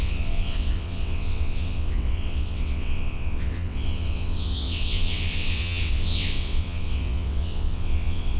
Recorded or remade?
remade